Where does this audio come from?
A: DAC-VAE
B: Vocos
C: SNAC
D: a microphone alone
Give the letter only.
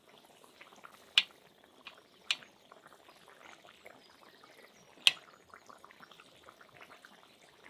D